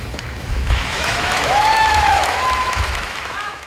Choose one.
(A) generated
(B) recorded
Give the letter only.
A